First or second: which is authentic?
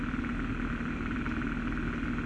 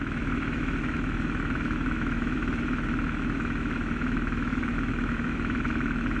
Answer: first